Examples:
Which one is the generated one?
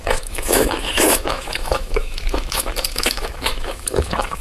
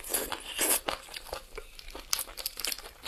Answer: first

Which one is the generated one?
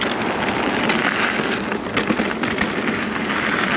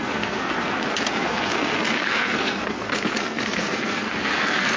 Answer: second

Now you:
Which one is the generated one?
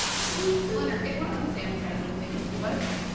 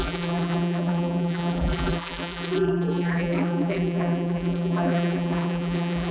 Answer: second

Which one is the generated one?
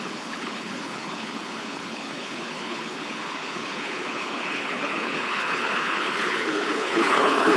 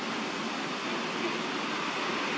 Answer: first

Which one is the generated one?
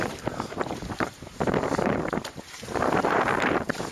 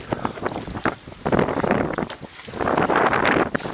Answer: first